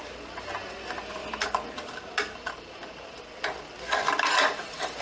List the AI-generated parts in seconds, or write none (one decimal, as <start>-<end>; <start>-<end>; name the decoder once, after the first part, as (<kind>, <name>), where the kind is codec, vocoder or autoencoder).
none

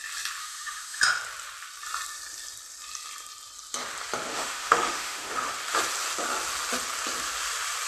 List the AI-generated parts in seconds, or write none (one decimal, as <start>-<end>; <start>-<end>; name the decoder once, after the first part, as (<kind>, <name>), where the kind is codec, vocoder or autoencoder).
0.4-1.0 (autoencoder, DAC-VAE); 4.3-5.5

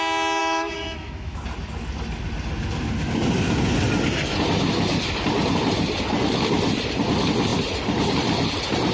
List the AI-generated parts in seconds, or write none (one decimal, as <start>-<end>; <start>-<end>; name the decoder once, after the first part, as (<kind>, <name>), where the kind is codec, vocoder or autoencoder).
0.4-1.4 (autoencoder, DAC-VAE)

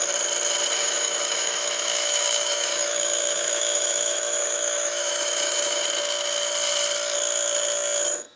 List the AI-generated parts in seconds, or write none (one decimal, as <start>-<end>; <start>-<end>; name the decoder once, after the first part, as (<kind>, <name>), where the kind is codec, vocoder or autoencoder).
0.8-5.8 (autoencoder, DAC-VAE)